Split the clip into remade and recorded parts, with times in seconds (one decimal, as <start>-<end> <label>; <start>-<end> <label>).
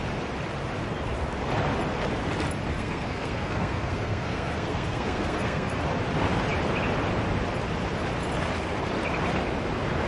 0.0-2.7 recorded; 2.7-5.8 remade; 5.8-10.1 recorded